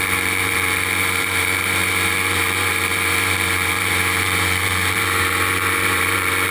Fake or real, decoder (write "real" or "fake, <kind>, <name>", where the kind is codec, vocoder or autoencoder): fake, vocoder, BigVGAN v2